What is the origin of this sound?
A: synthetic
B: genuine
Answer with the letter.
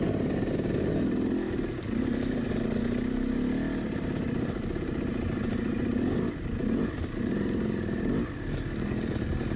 B